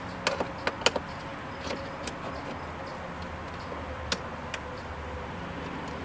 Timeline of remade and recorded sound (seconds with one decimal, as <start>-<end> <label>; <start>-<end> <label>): 0.0-6.0 recorded